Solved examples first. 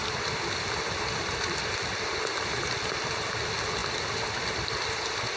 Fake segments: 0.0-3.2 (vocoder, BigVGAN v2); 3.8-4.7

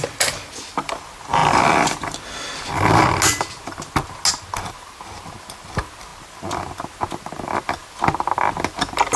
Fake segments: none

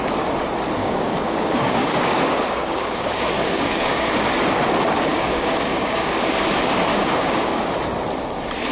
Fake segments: 0.8-4.3 (codec, DAC); 5.1-6.3; 6.9-7.7